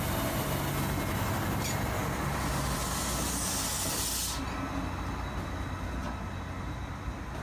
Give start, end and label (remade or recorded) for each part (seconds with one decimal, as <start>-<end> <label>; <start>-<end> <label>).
0.0-7.4 recorded